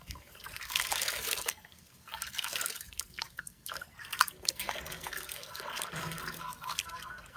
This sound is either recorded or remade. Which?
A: remade